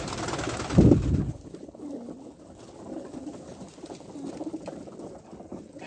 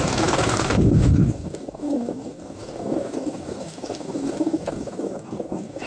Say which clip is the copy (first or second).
second